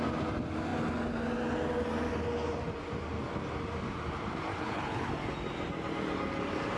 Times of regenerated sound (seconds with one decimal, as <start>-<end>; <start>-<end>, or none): 4.5-5.1